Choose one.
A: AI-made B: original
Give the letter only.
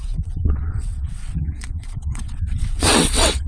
A